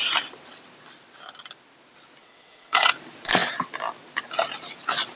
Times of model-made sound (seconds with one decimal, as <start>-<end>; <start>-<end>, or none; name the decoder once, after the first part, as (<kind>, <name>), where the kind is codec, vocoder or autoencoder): 2.2-2.9 (vocoder, WaveNeXt)